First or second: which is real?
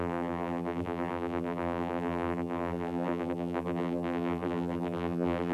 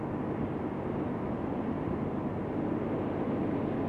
second